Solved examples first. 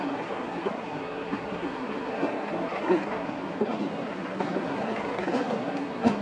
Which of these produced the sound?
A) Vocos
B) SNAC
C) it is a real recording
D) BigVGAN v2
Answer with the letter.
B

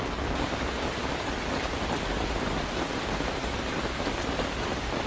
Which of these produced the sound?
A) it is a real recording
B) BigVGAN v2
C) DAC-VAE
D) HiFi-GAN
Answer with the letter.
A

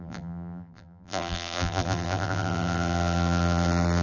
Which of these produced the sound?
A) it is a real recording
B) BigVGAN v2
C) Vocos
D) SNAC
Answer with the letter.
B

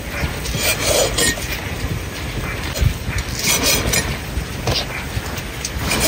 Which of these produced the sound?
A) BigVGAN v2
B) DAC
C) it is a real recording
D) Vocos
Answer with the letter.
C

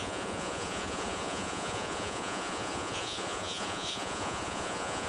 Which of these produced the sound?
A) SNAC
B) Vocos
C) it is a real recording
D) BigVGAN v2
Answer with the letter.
B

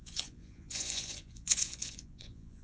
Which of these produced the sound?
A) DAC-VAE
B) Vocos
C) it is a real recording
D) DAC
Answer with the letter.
B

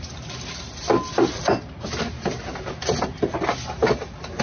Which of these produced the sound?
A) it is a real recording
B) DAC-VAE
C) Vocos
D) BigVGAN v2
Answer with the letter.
A